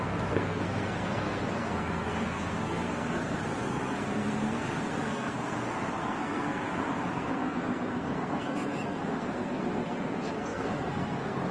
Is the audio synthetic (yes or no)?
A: yes